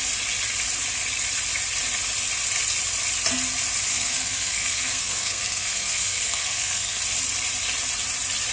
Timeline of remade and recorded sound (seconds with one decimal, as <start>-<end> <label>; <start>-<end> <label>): 0.0-3.9 recorded; 3.9-7.0 remade; 7.0-8.5 recorded